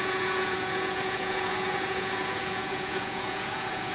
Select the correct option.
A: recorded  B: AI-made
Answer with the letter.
B